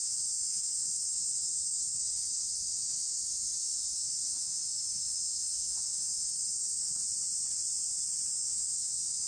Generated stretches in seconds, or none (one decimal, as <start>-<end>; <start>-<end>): 0.0-7.0; 8.3-9.3

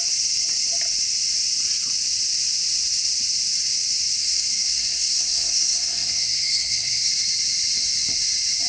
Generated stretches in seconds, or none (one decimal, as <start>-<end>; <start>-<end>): 4.2-7.1

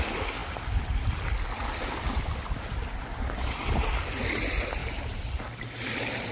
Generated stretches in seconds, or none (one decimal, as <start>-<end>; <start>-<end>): 4.8-5.4

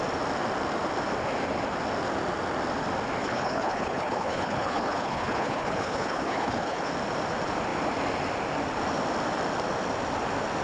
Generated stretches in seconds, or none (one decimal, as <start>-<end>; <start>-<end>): 3.2-6.9

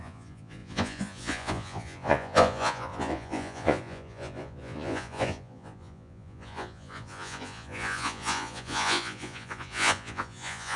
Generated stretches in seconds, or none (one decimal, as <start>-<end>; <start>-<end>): 0.0-10.8